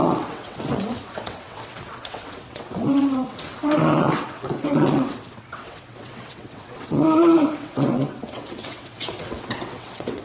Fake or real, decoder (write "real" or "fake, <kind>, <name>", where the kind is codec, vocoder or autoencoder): fake, vocoder, WaveNeXt